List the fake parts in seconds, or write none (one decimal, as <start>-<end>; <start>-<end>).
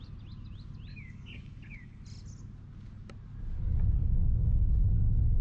0.9-2.0; 4.0-5.0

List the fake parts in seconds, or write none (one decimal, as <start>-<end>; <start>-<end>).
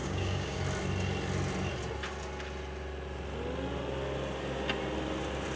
0.0-0.6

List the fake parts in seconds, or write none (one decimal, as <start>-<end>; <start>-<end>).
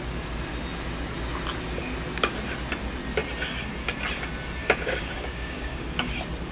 4.6-6.1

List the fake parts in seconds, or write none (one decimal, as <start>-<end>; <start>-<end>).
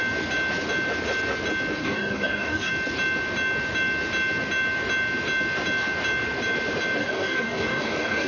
1.8-2.7; 7.0-8.3